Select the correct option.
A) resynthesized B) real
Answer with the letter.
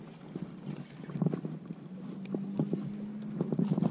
B